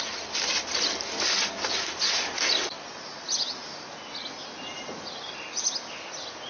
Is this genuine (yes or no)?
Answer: yes